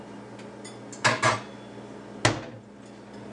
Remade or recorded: recorded